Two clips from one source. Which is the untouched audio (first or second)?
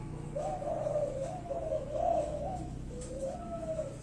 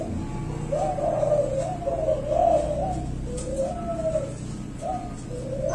second